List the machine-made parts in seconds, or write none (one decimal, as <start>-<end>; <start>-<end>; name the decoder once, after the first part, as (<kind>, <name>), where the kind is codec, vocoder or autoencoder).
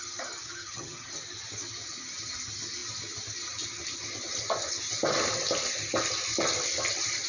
0.4-1.1 (vocoder, HiFi-GAN)